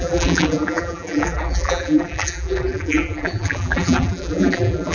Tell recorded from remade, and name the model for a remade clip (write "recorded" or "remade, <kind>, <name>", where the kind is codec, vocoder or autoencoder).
remade, vocoder, BigVGAN v2